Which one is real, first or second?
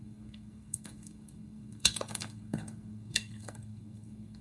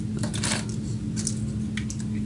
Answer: second